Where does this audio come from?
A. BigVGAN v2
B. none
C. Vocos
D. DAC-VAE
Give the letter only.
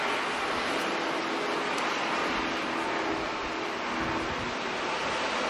B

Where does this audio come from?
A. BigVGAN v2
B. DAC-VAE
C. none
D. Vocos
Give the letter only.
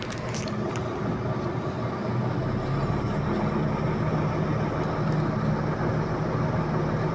C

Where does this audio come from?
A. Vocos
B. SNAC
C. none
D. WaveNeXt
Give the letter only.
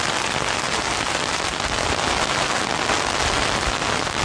C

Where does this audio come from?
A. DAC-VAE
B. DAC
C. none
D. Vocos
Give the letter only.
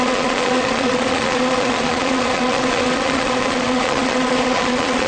D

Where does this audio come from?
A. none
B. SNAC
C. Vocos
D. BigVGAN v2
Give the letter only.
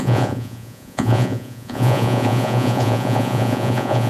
C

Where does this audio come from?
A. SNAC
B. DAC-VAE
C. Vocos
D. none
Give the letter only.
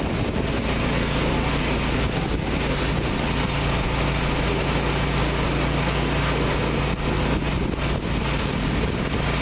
D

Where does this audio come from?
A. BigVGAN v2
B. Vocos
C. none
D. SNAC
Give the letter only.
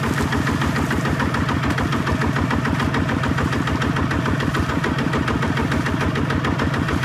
C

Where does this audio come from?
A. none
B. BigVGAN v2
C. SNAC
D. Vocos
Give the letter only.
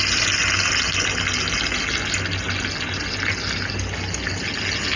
A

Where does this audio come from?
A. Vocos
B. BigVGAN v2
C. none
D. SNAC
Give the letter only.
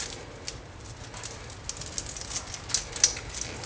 C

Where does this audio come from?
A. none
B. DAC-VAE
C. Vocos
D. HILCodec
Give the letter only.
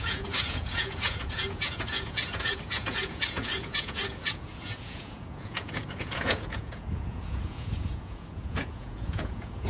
C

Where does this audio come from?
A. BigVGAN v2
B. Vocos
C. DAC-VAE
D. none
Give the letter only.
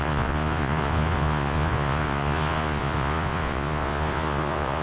B